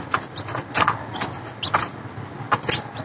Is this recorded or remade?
recorded